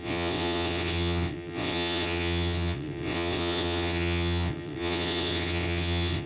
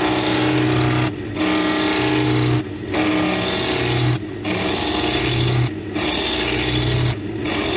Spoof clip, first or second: first